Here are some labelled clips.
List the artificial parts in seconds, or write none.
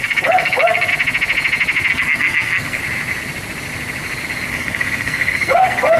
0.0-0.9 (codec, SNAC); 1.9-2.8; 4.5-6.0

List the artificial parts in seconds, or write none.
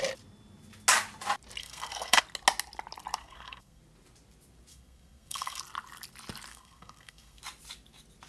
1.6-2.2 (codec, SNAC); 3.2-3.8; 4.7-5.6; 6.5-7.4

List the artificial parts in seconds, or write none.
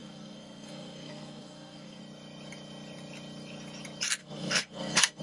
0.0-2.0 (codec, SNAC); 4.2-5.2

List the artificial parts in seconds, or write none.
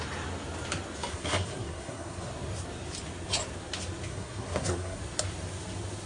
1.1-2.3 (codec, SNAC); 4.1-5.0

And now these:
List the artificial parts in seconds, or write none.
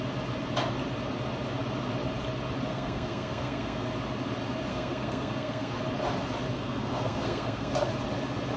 2.7-3.9 (codec, SNAC); 4.7-5.8; 6.5-7.9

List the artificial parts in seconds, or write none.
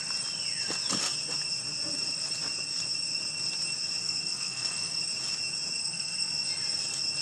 4.0-5.0 (codec, SNAC); 5.8-6.3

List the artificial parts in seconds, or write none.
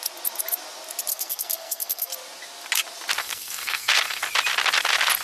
1.1-2.1 (codec, SNAC); 3.2-4.2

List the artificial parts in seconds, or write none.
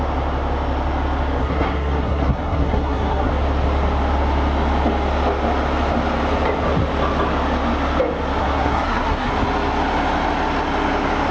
1.4-3.3 (codec, SNAC); 8.4-9.3